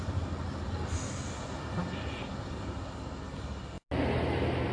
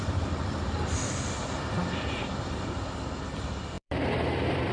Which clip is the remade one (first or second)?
second